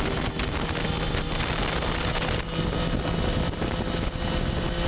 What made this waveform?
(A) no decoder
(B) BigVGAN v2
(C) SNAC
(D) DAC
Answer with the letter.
A